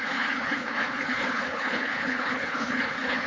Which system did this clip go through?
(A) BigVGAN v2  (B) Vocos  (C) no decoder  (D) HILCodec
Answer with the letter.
D